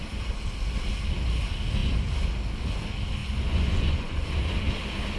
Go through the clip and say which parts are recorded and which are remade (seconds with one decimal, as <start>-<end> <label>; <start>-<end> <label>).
0.0-3.2 recorded; 3.2-4.3 remade; 4.3-5.2 recorded